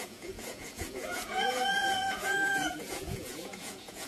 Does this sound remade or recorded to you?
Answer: remade